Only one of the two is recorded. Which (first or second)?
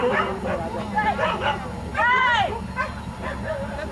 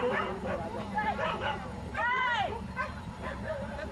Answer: first